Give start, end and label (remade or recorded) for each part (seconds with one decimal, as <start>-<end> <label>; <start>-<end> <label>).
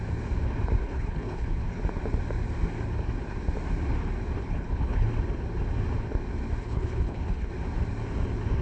0.0-0.8 recorded; 0.8-1.8 remade; 1.8-4.4 recorded; 4.4-5.1 remade; 5.1-6.6 recorded; 6.6-7.5 remade; 7.5-8.6 recorded